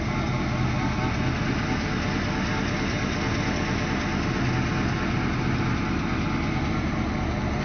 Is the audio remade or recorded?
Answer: recorded